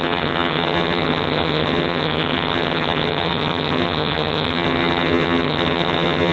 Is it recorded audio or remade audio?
remade